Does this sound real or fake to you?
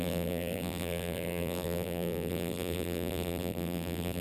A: fake